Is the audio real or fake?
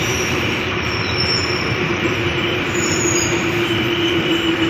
fake